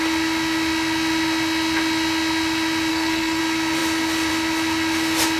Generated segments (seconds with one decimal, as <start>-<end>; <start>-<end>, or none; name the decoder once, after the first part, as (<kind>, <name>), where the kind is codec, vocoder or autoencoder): 2.9-3.4 (codec, SNAC)